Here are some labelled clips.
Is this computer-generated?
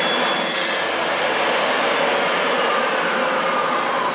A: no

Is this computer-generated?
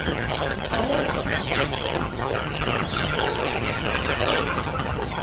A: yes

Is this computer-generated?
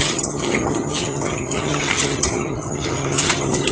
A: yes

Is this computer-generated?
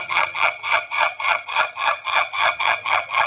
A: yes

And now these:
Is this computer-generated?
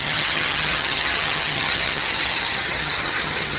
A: yes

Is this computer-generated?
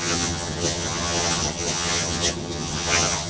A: yes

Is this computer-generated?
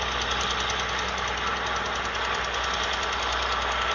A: no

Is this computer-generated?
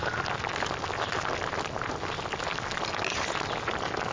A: no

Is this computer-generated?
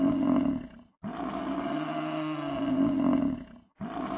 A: no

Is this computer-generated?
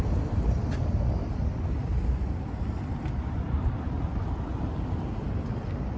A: no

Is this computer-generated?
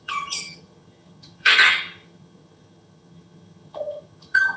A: yes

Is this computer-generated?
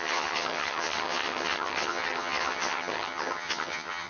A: yes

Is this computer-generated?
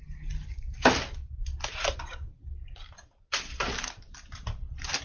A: no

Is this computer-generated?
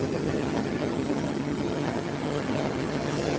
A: yes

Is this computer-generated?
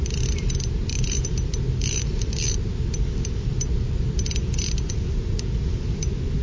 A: no